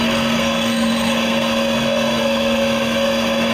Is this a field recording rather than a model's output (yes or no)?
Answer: no